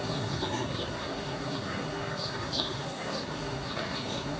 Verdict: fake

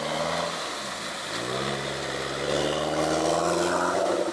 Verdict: real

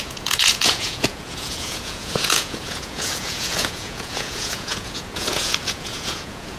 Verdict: fake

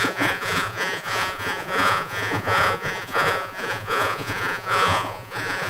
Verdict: fake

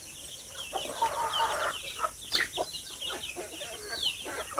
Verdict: real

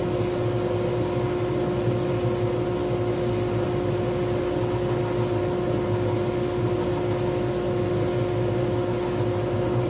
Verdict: real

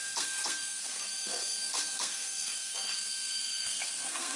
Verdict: fake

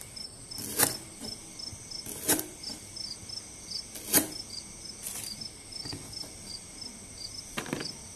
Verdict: real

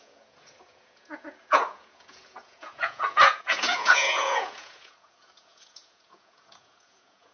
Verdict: fake